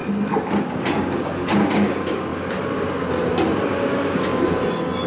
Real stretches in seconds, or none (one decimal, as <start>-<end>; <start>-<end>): 0.0-0.8; 2.3-3.7